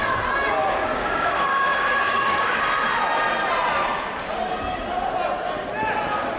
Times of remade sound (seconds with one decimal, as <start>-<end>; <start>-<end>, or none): 0.6-2.6